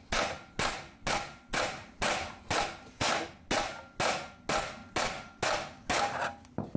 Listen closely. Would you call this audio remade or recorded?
recorded